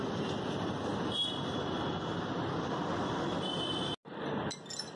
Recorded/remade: recorded